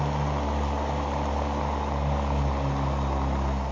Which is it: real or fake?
real